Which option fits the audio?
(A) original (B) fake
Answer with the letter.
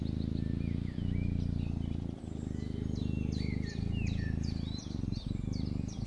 A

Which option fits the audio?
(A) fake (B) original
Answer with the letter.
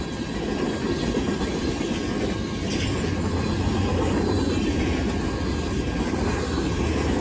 B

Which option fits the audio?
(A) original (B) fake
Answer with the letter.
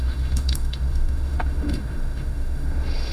B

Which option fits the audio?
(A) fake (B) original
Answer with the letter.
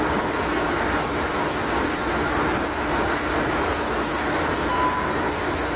B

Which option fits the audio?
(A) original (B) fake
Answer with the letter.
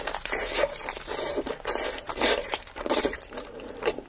B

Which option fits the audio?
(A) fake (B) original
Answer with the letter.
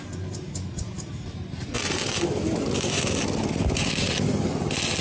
B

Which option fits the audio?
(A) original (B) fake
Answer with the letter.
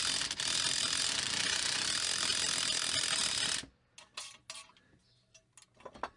A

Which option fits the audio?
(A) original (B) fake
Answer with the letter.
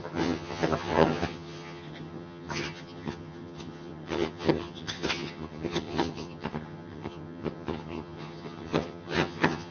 B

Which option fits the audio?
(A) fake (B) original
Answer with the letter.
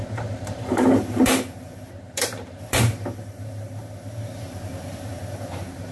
A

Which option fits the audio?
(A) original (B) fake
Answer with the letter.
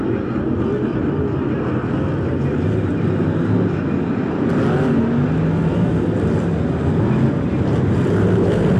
A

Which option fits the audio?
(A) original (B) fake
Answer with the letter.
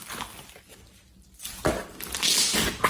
A